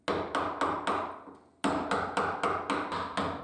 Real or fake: real